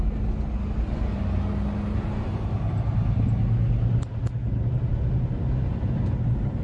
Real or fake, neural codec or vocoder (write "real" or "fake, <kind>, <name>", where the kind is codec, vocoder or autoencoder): real